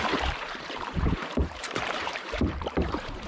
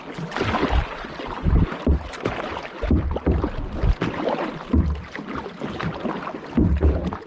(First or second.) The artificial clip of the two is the first